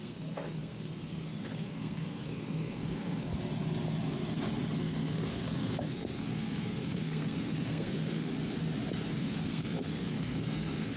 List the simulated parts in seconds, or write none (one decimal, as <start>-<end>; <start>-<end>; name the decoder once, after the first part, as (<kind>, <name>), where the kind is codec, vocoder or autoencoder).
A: 0.0-3.3 (codec, SNAC); 4.8-8.3; 9.2-11.0